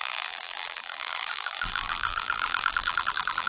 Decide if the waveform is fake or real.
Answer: fake